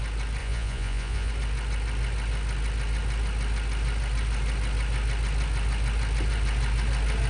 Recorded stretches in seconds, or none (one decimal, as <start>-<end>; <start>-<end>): 0.0-0.4; 1.3-7.3